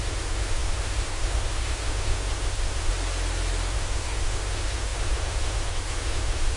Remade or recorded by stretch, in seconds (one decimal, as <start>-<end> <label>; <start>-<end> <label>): 0.0-2.9 remade; 2.9-3.7 recorded; 3.7-6.6 remade